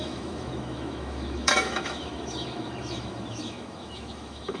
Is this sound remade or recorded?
remade